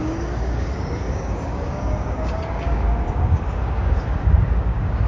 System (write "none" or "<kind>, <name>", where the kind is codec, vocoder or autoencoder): codec, DAC